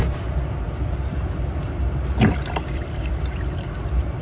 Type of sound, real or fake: real